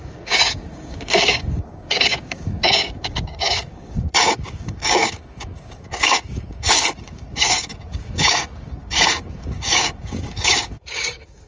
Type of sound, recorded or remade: remade